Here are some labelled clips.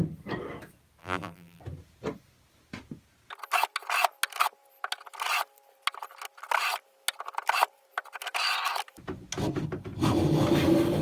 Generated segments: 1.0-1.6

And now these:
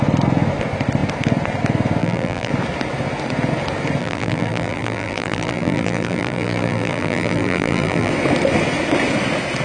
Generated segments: 2.0-2.5; 4.0-8.1

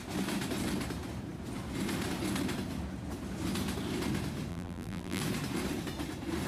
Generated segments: 4.5-5.2

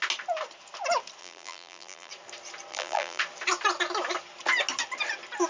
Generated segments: 1.2-2.1; 2.7-3.2

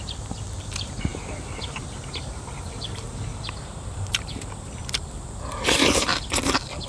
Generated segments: 0.0-6.1